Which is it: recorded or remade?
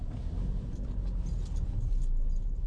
recorded